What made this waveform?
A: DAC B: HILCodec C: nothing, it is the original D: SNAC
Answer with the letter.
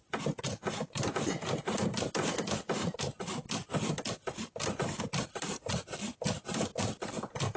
C